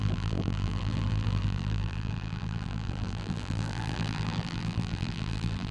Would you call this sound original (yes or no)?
no